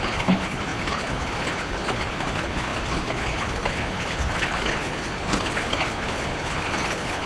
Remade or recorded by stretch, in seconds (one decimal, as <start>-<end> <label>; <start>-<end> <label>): 0.0-7.3 remade